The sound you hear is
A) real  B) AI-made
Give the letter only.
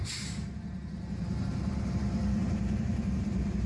B